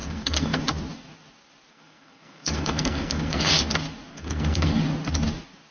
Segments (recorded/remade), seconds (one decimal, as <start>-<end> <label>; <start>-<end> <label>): 0.0-0.6 remade; 0.6-1.7 recorded; 1.7-3.5 remade; 3.5-4.1 recorded; 4.1-4.8 remade; 4.8-5.7 recorded